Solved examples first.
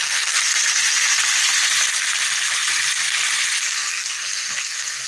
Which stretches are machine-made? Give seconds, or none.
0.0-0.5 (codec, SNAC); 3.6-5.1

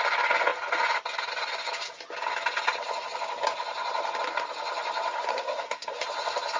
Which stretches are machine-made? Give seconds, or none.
5.3-6.0 (codec, SNAC)

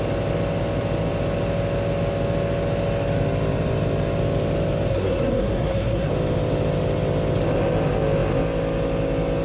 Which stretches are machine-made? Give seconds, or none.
4.9-6.1 (codec, SNAC)

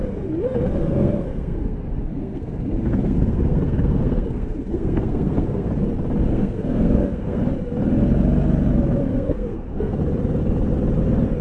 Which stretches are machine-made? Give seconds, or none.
0.8-5.7 (codec, SNAC); 6.2-7.4; 9.0-10.0